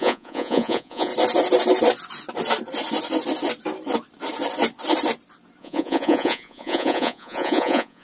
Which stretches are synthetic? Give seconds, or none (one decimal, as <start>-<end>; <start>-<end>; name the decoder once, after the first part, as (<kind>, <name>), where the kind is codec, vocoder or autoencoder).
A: 0.0-1.1 (vocoder, Vocos); 5.6-8.0